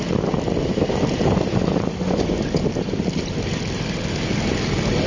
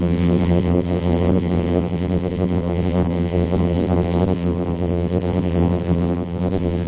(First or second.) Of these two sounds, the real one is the first